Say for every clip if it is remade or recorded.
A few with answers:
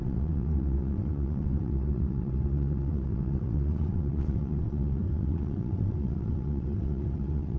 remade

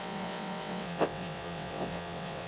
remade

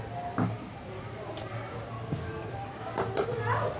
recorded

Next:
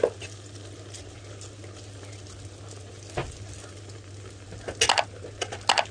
recorded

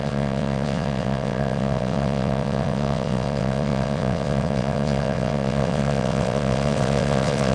remade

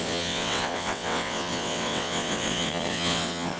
remade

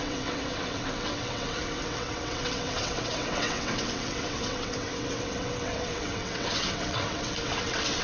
remade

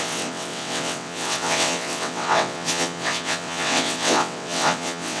remade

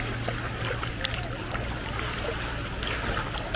recorded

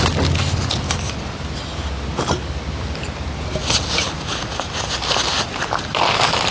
recorded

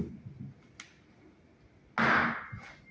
recorded